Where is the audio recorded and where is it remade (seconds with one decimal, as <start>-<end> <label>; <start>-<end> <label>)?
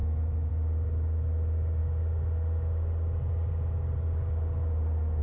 0.0-5.2 recorded